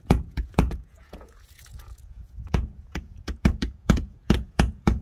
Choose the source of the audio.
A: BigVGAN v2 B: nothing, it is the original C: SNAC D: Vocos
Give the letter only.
D